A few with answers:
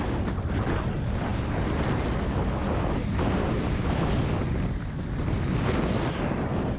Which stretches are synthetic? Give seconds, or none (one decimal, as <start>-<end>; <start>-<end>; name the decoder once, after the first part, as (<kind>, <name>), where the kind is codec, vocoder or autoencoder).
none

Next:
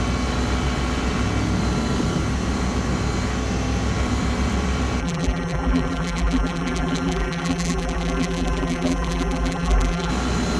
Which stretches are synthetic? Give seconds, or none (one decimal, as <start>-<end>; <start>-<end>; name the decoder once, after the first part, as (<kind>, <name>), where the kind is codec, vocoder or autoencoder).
5.0-10.1 (vocoder, BigVGAN v2)

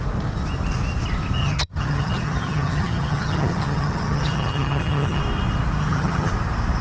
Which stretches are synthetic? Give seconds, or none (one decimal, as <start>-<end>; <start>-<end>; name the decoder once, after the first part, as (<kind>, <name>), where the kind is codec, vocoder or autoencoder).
1.4-5.2 (vocoder, HiFi-GAN); 5.8-6.3

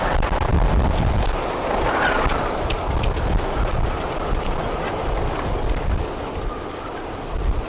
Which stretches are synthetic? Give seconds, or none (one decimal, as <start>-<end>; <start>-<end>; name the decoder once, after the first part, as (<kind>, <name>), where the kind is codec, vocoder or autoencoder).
none

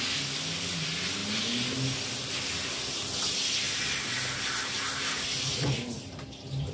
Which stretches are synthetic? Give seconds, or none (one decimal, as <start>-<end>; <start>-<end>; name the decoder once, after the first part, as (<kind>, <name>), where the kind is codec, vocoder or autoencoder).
none